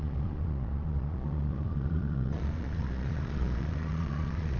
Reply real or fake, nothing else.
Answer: fake